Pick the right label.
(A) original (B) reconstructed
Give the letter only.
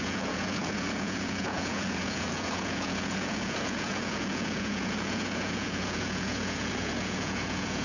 B